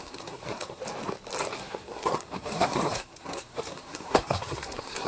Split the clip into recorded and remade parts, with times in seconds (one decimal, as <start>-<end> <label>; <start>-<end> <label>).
0.0-0.8 remade; 0.8-1.6 recorded; 1.6-5.1 remade